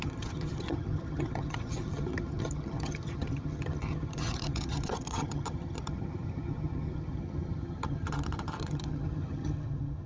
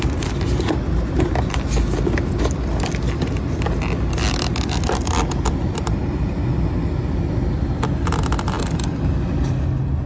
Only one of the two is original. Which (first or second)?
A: second